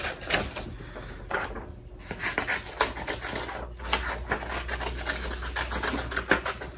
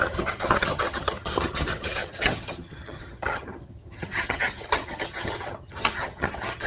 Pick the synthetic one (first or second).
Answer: second